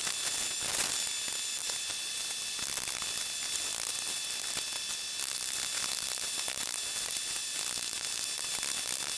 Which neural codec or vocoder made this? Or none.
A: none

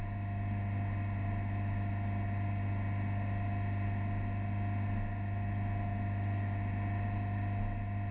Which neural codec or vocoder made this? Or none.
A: none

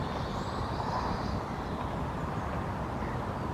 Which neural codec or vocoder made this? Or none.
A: none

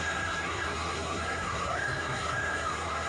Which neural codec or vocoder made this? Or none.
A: codec, SNAC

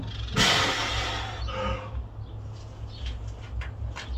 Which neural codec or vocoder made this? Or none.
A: none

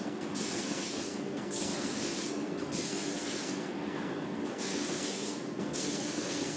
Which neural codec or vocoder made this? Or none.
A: codec, SNAC